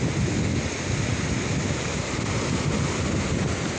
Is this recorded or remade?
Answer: recorded